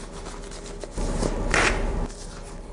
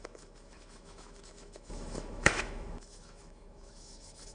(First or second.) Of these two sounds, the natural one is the first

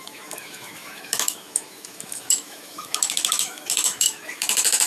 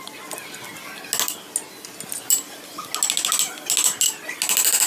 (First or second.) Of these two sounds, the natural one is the second